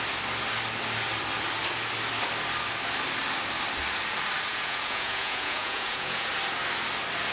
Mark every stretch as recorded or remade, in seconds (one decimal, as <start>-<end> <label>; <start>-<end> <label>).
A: 0.0-4.5 recorded; 4.5-6.3 remade; 6.3-7.3 recorded